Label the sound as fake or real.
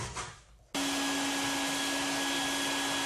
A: real